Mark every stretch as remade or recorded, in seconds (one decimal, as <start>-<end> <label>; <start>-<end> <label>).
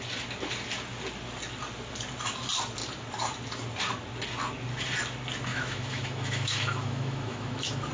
0.0-5.5 recorded; 5.5-7.9 remade